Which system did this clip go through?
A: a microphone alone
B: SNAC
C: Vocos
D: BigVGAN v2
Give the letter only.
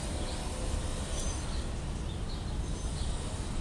A